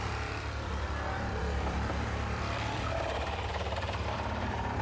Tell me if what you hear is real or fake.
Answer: fake